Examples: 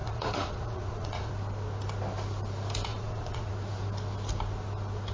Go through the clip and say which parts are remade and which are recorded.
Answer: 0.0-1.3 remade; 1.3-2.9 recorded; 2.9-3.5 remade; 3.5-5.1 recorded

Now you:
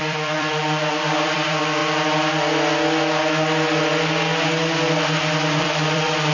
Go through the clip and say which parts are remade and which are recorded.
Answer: 0.0-1.8 remade; 1.8-5.6 recorded; 5.6-6.3 remade

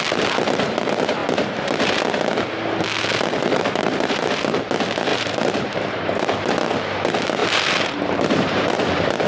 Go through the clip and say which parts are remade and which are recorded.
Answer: 0.0-3.4 recorded; 3.4-4.3 remade; 4.3-5.1 recorded; 5.1-6.5 remade; 6.5-7.4 recorded; 7.4-8.7 remade; 8.7-9.3 recorded

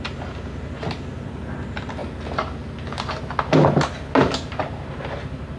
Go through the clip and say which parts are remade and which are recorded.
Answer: 0.0-5.6 recorded